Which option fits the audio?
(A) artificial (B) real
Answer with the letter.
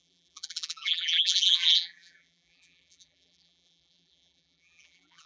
A